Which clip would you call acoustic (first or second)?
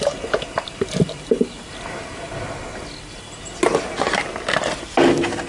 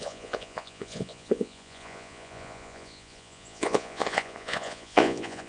first